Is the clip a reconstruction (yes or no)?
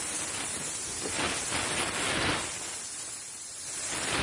no